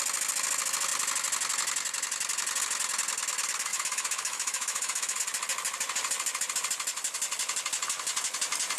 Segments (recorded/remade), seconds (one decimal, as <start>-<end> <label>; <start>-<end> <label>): 0.0-3.7 recorded; 3.7-5.2 remade; 5.2-8.8 recorded